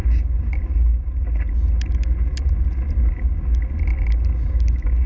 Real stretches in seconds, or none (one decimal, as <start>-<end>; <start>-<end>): 0.0-5.1